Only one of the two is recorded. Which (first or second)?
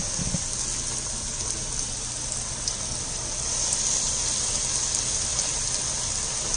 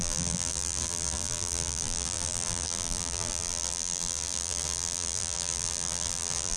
first